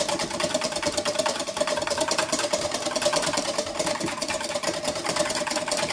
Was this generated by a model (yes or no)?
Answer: no